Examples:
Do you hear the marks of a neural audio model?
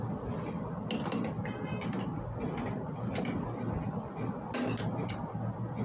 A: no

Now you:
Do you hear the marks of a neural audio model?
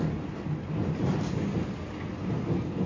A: no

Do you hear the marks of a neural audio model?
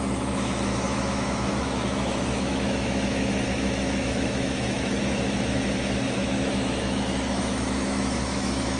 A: yes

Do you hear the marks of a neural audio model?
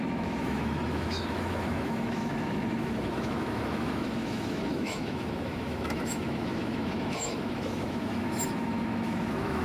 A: yes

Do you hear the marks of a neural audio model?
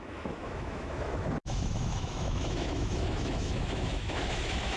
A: yes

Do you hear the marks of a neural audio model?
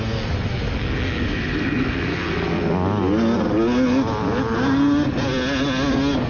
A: no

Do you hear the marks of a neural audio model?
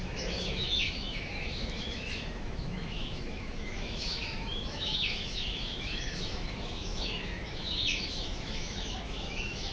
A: yes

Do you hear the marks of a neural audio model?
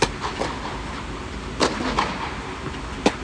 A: no